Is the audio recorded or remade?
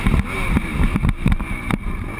remade